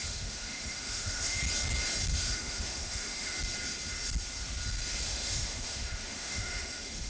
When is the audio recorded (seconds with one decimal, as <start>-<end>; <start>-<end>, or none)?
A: 1.4-2.1; 3.4-5.1